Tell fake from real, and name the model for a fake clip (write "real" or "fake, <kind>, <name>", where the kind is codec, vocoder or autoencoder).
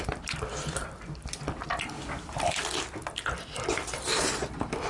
fake, vocoder, BigVGAN v2